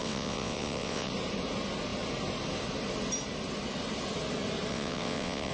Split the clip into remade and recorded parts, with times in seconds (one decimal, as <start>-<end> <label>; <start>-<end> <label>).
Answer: 0.0-1.1 remade; 1.1-4.7 recorded; 4.7-5.5 remade